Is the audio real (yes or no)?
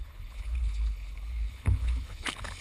no